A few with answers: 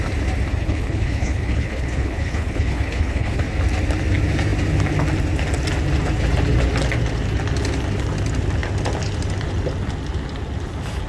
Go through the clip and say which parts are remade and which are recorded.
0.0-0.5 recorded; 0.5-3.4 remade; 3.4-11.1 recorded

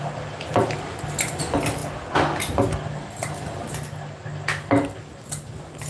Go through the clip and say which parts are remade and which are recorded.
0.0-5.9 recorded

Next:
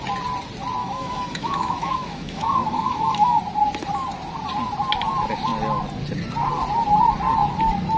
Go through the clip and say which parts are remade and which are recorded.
0.0-0.8 recorded; 0.8-3.4 remade; 3.4-8.0 recorded